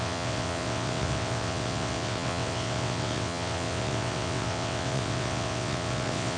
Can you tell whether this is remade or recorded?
remade